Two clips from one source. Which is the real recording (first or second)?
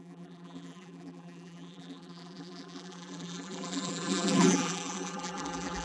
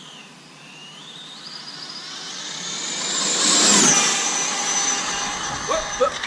second